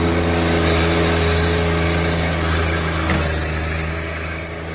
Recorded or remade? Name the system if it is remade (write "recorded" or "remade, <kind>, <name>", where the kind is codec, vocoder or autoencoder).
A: recorded